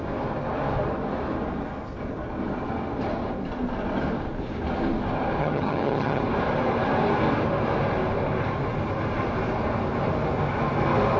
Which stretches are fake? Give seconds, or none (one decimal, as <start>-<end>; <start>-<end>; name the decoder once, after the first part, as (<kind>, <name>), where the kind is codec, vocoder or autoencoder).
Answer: 5.4-6.2 (vocoder, HiFi-GAN)